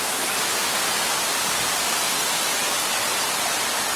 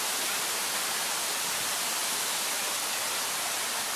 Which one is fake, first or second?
second